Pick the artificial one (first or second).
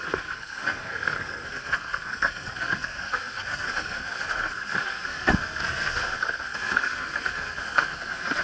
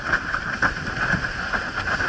first